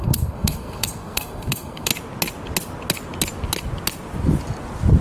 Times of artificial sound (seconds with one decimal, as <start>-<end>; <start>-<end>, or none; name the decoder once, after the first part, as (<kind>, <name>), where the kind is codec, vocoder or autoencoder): 0.0-1.9 (codec, SNAC)

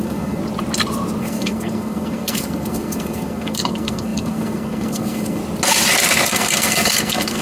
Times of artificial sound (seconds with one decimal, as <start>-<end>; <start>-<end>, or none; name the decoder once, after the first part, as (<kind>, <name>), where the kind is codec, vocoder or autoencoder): 0.0-0.4 (codec, SNAC); 1.2-5.4; 6.3-7.4

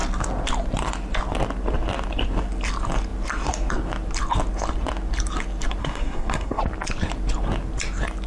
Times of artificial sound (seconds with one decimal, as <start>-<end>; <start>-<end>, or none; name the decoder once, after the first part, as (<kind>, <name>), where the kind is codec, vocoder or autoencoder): 5.8-6.6 (codec, SNAC)

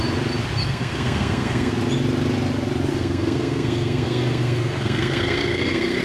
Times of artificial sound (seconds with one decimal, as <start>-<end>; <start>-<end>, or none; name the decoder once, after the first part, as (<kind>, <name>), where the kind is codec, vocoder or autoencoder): 0.6-1.7 (codec, SNAC); 2.9-6.0

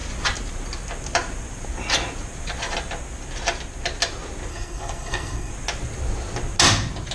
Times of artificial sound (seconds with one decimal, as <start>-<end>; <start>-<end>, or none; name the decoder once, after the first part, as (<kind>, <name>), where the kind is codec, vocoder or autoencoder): 4.5-5.5 (codec, SNAC)

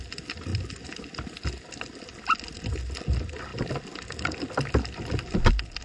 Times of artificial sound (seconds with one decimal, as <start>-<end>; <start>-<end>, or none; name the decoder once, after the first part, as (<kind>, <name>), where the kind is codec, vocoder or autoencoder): none